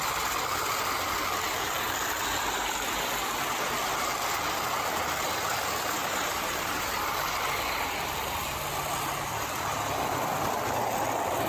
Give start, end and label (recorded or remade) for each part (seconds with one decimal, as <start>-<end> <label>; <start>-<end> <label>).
0.0-6.0 recorded; 6.0-6.7 remade; 6.7-11.5 recorded